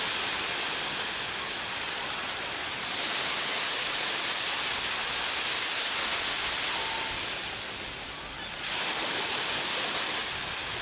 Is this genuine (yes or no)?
yes